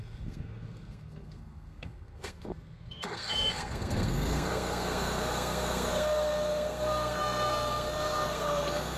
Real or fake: fake